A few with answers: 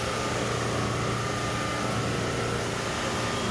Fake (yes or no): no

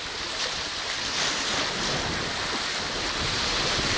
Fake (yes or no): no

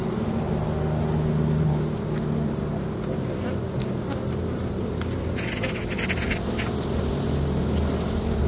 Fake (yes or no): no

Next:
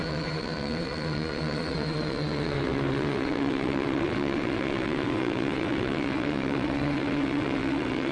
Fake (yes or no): yes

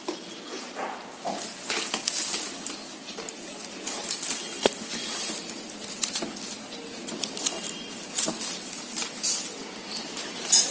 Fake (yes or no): no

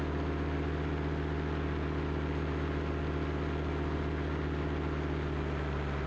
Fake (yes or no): no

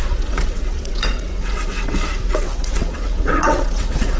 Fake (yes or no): yes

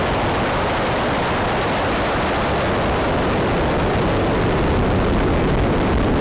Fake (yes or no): no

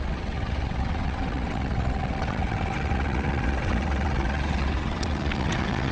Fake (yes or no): yes